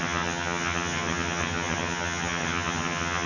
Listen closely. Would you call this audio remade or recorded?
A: remade